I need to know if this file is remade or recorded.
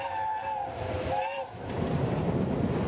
recorded